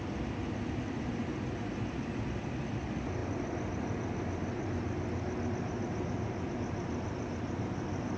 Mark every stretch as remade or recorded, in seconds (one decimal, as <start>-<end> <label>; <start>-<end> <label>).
0.0-8.2 recorded